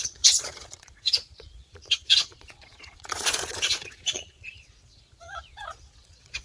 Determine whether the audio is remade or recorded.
remade